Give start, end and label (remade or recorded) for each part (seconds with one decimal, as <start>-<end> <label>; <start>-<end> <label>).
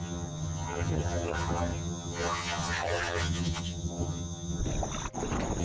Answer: 0.0-4.6 remade; 4.6-5.6 recorded